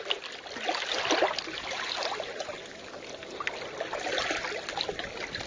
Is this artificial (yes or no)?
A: no